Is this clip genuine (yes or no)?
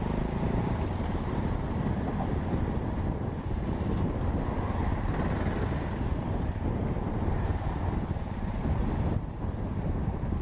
yes